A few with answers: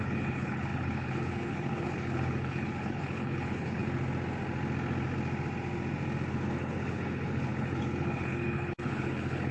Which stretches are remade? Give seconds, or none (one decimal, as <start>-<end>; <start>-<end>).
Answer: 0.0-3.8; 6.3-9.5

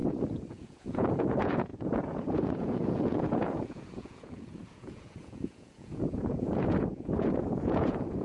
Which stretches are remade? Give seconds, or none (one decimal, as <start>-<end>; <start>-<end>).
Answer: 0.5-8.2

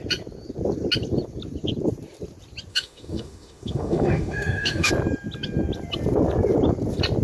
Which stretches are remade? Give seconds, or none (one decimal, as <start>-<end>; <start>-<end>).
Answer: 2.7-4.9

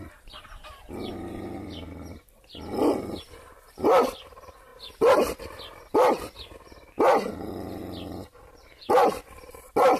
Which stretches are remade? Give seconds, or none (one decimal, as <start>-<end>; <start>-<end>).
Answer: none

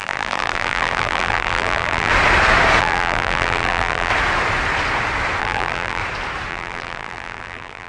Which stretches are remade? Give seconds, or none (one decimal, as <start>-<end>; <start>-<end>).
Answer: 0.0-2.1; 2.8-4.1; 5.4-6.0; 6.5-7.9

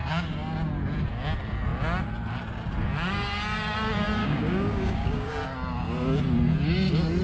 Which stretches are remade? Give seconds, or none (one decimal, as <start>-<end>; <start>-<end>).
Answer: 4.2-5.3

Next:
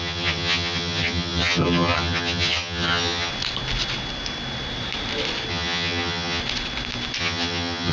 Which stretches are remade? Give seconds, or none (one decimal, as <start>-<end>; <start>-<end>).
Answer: 0.0-3.3; 5.5-6.4; 7.2-7.9